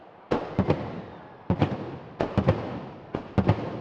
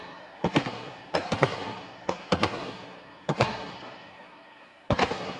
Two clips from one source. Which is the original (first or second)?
first